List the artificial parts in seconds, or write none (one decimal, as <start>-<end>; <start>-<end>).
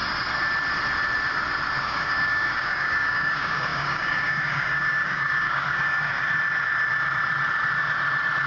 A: 1.8-6.2